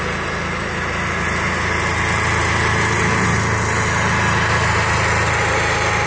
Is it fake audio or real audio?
real